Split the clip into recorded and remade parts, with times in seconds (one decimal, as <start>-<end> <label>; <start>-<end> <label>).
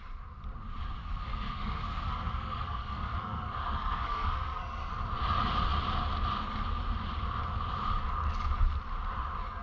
0.0-1.0 recorded; 1.0-4.9 remade; 4.9-9.6 recorded